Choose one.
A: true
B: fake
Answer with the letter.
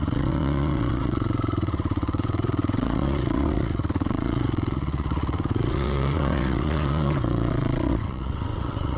B